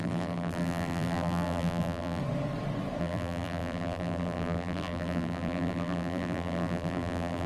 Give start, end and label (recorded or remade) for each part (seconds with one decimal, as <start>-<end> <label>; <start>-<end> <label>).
0.0-2.2 remade; 2.2-3.0 recorded; 3.0-7.5 remade